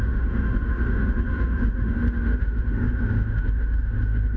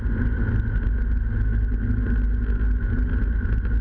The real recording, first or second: second